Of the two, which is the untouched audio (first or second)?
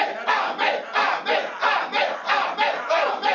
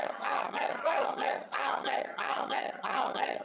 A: first